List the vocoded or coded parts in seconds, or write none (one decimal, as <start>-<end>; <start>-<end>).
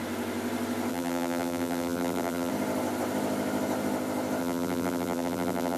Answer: 0.9-2.5; 4.4-5.8